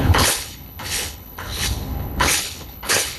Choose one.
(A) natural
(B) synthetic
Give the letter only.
B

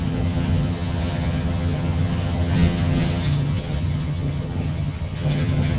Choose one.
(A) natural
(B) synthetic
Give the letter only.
B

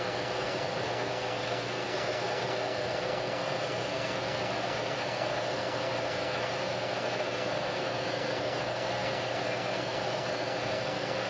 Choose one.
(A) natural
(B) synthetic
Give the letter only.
B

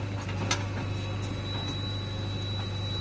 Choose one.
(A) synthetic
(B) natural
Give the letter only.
B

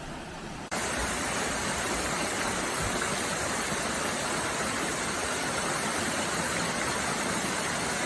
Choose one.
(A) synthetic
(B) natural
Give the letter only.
A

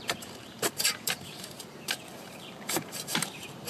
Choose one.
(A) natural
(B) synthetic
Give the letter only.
B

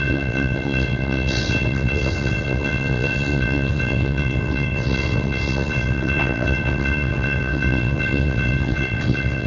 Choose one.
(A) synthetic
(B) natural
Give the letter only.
A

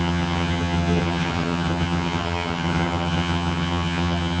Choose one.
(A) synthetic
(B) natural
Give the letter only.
A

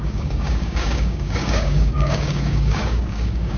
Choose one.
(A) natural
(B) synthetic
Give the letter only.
B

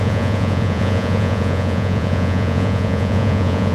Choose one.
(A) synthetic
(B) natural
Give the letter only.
A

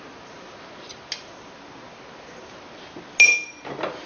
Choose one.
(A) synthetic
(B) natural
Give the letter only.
B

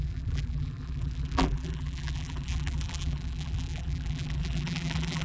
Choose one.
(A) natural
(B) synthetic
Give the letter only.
B